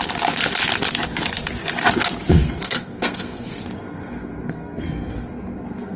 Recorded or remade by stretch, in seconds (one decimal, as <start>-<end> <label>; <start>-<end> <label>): 0.0-2.3 recorded; 2.3-6.0 remade